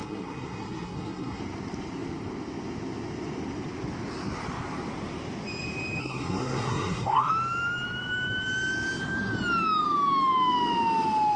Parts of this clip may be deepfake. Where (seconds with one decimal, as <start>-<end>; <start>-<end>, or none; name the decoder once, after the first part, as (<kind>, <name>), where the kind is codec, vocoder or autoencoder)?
0.0-1.4 (codec, SNAC); 6.0-7.3